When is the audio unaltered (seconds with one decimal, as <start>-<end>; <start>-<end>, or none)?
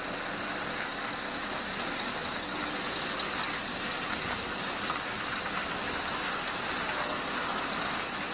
0.0-8.3